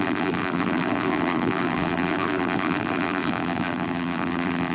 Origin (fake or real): fake